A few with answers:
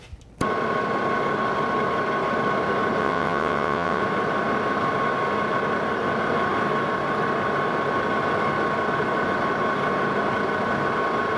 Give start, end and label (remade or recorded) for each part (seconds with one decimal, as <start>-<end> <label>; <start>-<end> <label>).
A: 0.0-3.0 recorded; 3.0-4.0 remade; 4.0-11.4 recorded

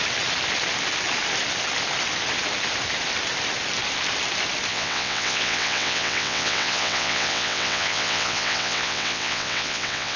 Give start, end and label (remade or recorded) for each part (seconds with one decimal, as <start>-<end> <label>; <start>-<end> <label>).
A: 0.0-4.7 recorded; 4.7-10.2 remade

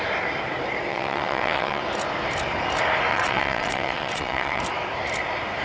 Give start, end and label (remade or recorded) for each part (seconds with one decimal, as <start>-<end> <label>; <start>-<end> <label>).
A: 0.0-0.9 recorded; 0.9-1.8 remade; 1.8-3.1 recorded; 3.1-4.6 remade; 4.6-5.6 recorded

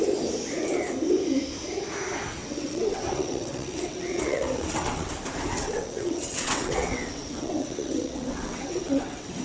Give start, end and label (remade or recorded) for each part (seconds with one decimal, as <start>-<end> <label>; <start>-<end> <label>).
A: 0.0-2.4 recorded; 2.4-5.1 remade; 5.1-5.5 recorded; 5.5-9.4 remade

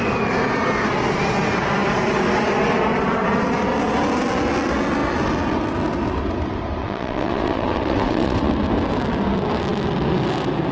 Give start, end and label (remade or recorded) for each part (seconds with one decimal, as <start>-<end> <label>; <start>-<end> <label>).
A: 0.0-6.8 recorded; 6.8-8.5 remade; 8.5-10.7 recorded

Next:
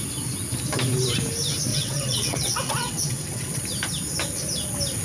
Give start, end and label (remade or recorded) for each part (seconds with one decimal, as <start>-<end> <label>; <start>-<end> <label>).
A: 0.0-1.7 recorded; 1.7-3.6 remade; 3.6-5.0 recorded